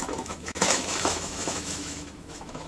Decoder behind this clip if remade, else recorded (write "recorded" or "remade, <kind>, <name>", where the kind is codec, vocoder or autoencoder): remade, autoencoder, DAC-VAE